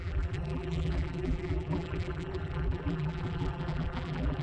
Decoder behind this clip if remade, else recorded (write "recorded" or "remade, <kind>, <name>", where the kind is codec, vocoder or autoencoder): remade, vocoder, BigVGAN v2